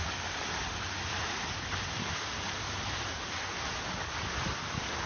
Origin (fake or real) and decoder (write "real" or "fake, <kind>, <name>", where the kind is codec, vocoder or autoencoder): real